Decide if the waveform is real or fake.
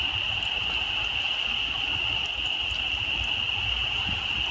real